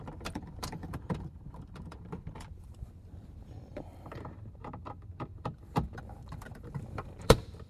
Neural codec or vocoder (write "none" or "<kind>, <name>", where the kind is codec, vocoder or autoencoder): vocoder, BigVGAN v2